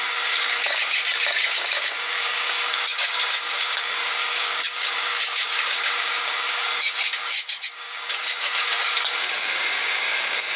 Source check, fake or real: fake